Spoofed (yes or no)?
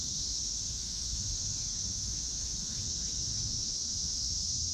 yes